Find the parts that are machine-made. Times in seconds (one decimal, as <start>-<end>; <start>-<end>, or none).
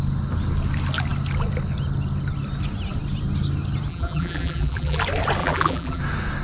3.9-5.0; 5.4-6.0